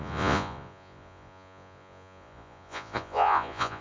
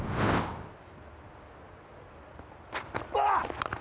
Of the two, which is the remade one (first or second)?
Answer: first